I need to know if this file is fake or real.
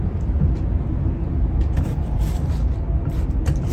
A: real